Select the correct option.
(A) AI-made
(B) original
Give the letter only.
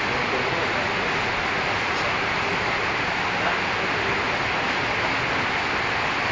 B